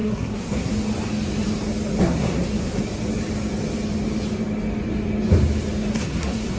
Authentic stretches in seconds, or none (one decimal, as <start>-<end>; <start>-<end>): 0.7-2.0; 2.8-5.9